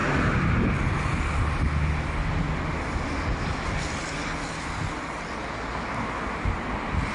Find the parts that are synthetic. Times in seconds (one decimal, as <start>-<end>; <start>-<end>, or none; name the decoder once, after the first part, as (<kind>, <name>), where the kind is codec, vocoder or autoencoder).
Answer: none